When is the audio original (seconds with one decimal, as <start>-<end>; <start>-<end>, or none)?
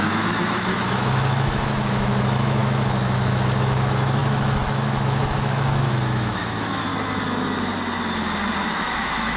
6.9-8.7